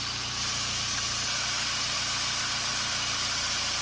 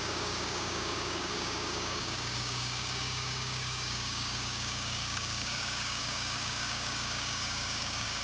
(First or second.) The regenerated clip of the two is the second